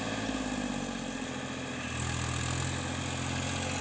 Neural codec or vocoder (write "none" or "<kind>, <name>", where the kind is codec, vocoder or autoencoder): none